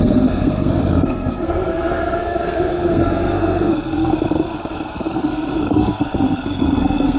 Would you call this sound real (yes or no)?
no